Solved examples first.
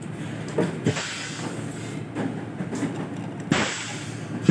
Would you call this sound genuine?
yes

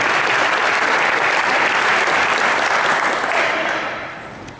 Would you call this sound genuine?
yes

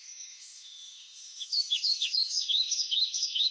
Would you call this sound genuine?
no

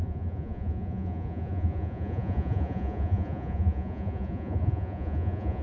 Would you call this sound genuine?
no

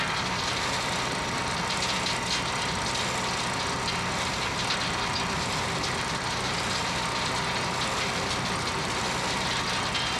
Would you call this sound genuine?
yes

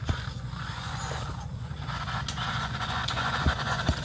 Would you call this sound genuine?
no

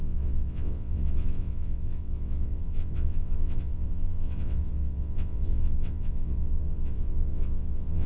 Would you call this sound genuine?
no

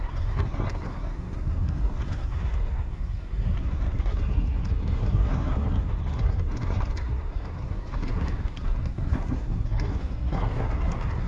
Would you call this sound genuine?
no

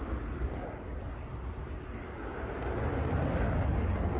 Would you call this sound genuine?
yes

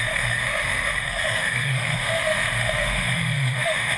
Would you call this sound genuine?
no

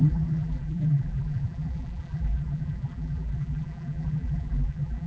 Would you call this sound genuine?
no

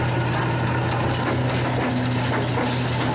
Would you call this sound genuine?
yes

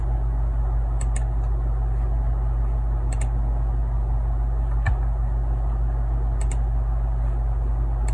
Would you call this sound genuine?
yes